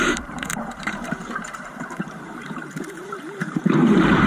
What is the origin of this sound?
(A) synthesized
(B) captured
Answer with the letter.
A